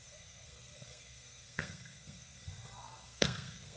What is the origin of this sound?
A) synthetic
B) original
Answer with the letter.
A